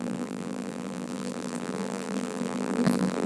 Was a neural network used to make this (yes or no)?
yes